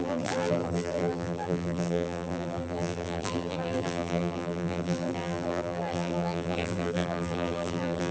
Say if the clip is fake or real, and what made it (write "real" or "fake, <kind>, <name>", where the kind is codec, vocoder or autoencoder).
fake, vocoder, BigVGAN v2